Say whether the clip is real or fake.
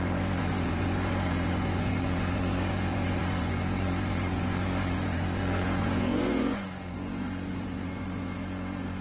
fake